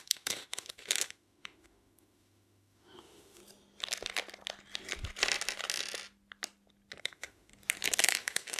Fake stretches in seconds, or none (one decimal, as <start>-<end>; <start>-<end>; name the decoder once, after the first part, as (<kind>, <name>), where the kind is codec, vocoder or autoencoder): 0.0-3.4 (autoencoder, DAC-VAE); 7.0-7.5; 8.0-8.6